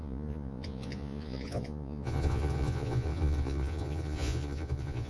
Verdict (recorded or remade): remade